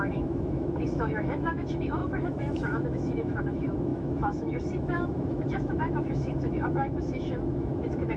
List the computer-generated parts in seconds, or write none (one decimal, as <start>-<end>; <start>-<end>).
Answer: 0.0-8.2